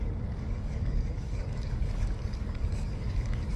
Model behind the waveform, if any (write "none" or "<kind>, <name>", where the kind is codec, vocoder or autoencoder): codec, DAC